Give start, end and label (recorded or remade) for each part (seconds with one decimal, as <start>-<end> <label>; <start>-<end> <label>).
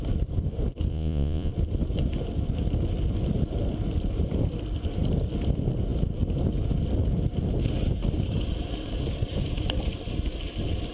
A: 0.0-0.9 recorded; 0.9-1.5 remade; 1.5-10.9 recorded